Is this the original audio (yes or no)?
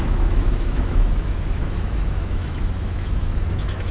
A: no